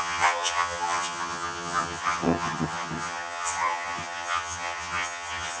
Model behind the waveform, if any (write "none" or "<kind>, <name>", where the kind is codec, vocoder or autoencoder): vocoder, HiFi-GAN